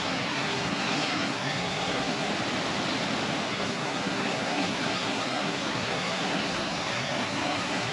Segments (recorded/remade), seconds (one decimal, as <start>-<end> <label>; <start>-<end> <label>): 0.0-2.3 remade; 2.3-3.5 recorded; 3.5-7.9 remade